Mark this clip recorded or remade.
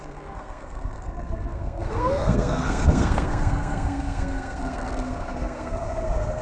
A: remade